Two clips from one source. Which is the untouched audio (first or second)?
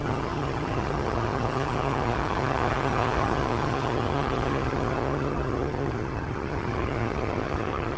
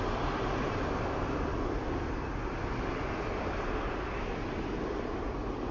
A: second